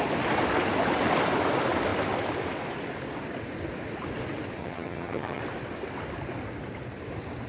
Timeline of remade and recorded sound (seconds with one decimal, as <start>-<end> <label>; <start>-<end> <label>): 0.0-4.6 recorded; 4.6-5.4 remade; 5.4-7.5 recorded